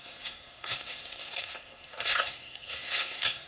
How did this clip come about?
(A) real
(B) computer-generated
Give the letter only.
B